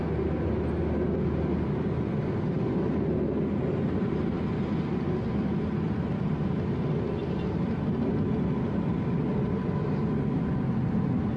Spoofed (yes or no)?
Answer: no